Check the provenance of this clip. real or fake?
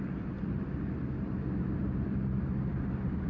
real